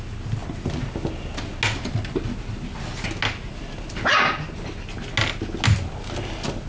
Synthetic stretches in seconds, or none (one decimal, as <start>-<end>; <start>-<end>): none